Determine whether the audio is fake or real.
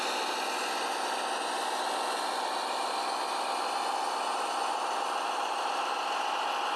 real